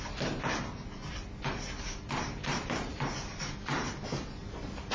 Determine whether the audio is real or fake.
real